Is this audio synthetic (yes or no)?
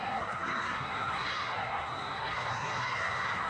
yes